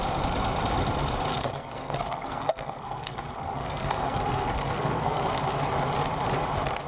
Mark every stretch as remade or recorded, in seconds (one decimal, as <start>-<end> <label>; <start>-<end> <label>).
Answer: 0.0-1.3 recorded; 1.3-5.4 remade; 5.4-6.9 recorded